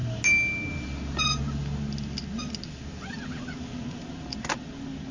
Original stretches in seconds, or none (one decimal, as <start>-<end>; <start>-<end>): 0.0-5.1